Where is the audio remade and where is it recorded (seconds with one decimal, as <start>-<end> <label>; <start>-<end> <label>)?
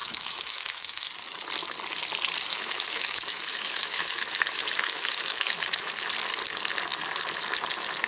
0.0-1.1 remade; 1.1-2.5 recorded; 2.5-5.9 remade; 5.9-8.1 recorded